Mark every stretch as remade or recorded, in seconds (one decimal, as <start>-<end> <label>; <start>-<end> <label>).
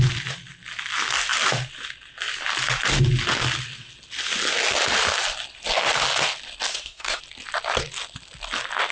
0.0-6.7 recorded; 6.7-7.2 remade; 7.2-8.9 recorded